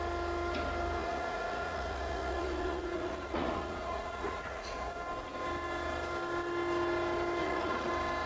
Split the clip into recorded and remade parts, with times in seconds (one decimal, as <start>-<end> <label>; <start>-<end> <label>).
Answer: 0.0-1.0 recorded; 1.0-4.9 remade; 4.9-7.4 recorded; 7.4-7.9 remade; 7.9-8.3 recorded